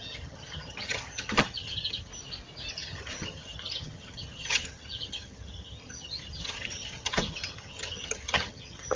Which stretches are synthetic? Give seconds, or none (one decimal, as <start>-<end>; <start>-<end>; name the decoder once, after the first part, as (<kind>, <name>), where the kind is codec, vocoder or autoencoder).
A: 0.0-2.1 (vocoder, HiFi-GAN); 2.7-9.0